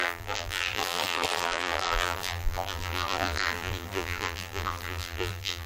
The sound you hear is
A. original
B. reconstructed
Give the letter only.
B